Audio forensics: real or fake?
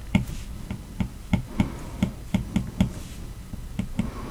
real